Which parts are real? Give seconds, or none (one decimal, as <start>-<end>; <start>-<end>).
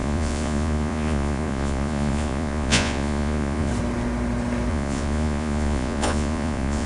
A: 3.7-4.7